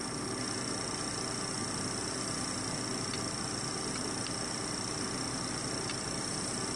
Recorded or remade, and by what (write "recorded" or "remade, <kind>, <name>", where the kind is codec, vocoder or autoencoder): recorded